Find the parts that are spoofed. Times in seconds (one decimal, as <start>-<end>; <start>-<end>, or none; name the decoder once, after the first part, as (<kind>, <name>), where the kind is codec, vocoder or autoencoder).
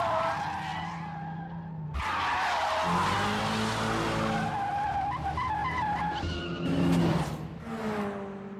none